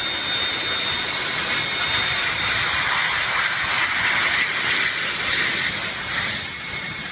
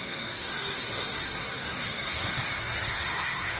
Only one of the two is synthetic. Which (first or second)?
second